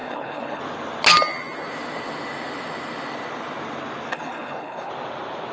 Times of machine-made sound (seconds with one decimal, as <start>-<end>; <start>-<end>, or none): 0.0-0.6; 4.1-4.9